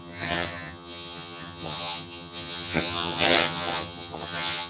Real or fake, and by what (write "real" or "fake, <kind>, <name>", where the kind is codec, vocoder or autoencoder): fake, vocoder, HiFi-GAN